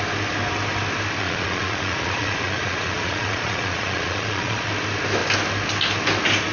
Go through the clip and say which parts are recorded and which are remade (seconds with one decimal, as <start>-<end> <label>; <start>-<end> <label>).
0.0-1.2 recorded; 1.2-4.7 remade; 4.7-6.5 recorded